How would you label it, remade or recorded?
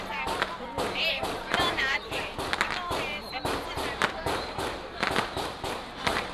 remade